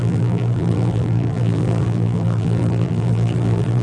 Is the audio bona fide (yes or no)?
no